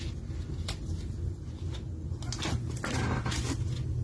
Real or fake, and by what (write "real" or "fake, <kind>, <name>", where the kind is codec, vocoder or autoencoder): real